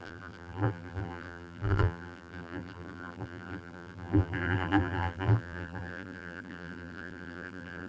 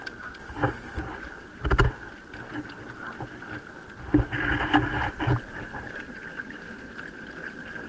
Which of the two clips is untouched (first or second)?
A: second